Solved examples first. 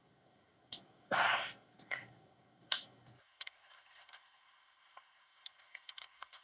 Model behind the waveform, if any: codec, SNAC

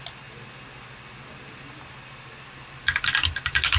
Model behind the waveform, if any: none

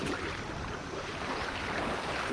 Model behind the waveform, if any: none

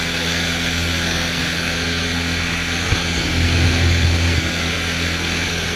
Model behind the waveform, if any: codec, SNAC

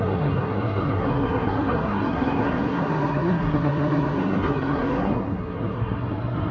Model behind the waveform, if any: codec, SNAC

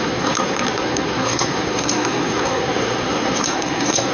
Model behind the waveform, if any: codec, SNAC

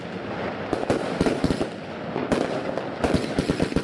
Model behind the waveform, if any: none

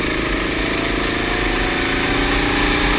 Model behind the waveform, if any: none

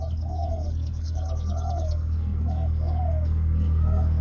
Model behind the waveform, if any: codec, SNAC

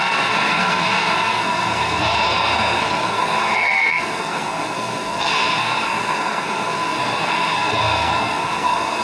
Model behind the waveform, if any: codec, SNAC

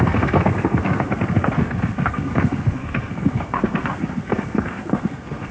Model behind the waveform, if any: codec, SNAC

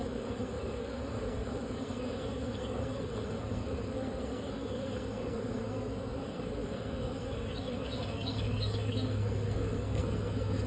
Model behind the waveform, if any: codec, SNAC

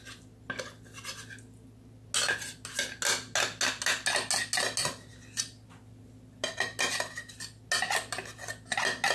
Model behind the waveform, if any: none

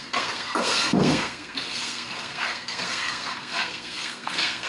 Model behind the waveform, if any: codec, SNAC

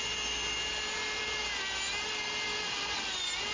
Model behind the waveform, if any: none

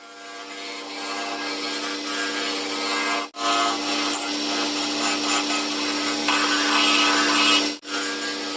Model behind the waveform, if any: none